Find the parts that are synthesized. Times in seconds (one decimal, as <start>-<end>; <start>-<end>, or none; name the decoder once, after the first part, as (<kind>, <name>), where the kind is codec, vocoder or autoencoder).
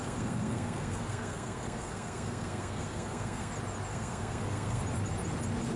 0.0-3.5 (codec, SNAC); 3.9-4.8